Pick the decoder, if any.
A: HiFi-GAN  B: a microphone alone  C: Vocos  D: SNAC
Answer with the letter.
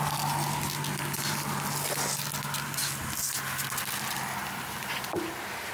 B